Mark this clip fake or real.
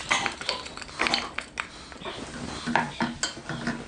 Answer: real